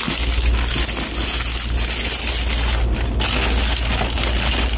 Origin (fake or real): real